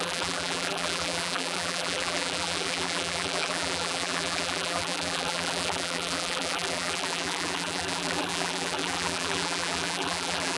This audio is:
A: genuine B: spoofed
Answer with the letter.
B